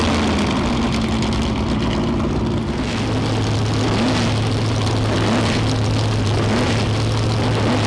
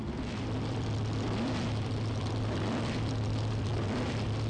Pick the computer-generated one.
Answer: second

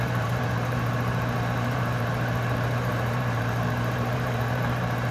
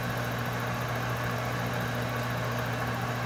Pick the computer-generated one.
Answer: first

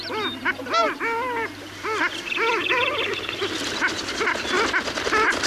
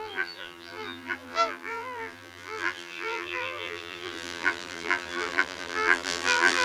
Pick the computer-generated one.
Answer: second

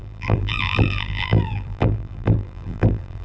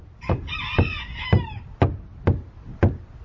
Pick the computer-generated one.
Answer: first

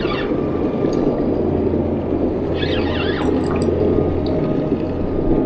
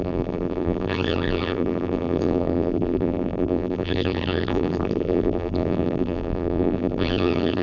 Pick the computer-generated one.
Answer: second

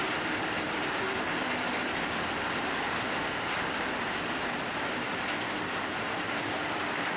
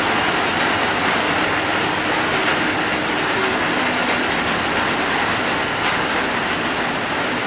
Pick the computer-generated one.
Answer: first